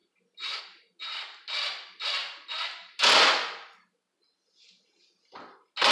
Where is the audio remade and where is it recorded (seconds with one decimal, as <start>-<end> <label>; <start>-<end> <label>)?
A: 0.0-5.9 recorded